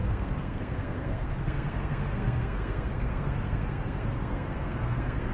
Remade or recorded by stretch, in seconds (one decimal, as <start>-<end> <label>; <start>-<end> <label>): 0.0-5.3 remade